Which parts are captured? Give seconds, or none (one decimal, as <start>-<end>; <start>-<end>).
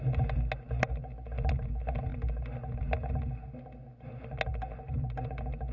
0.0-5.7